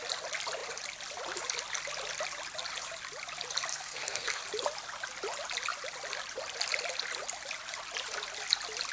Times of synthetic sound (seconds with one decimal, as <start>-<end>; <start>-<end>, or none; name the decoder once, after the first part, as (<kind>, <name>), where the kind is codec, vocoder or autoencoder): 3.7-4.4 (codec, SNAC)